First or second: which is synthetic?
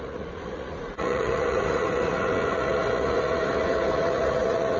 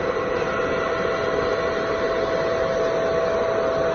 first